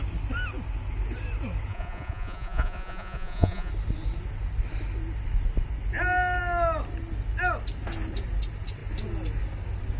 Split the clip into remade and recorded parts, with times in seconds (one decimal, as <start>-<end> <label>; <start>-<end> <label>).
0.0-1.7 recorded; 1.7-3.7 remade; 3.7-10.0 recorded